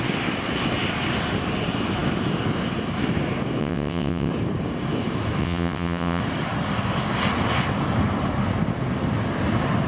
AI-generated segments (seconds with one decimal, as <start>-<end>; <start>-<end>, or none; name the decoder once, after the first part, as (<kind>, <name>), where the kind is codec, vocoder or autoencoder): 3.6-4.3 (vocoder, WaveNeXt); 5.4-6.2